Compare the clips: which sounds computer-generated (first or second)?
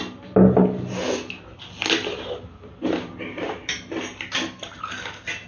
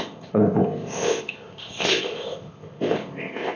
second